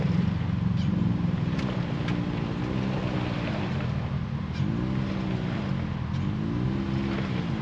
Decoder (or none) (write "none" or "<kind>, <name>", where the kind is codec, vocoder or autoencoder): none